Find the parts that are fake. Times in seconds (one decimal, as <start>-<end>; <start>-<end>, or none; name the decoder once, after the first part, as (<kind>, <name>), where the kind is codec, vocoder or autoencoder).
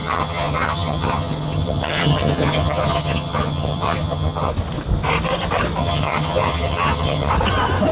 0.0-4.5 (vocoder, HiFi-GAN); 5.8-7.3